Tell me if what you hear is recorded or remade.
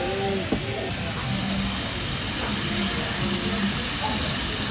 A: recorded